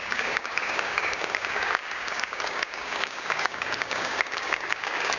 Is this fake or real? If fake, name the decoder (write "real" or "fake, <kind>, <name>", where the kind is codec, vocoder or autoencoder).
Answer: fake, codec, DAC